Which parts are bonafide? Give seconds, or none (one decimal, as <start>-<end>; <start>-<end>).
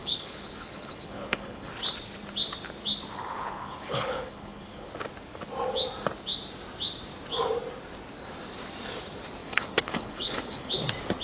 1.7-3.1; 4.9-9.4; 10.7-11.2